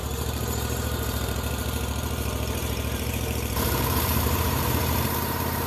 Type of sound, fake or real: fake